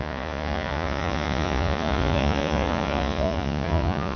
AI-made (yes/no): yes